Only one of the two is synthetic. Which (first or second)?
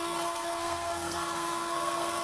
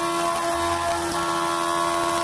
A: first